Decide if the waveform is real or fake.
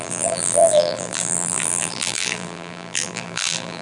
fake